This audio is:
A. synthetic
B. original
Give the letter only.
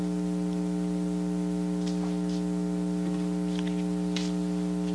B